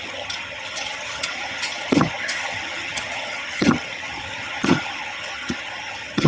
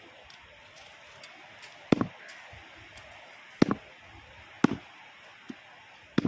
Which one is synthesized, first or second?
first